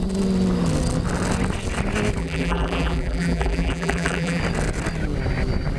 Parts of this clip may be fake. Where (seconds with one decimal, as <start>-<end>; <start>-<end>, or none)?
2.2-4.4